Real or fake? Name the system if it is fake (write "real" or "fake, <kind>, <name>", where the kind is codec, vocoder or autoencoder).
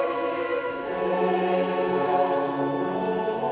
fake, autoencoder, DAC-VAE